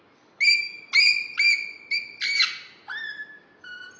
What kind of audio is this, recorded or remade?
recorded